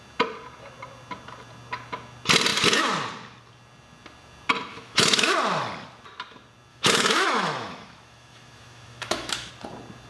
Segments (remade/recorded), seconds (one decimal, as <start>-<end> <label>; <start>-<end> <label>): 0.0-4.7 recorded; 4.7-5.3 remade; 5.3-6.7 recorded; 6.7-9.5 remade; 9.5-10.1 recorded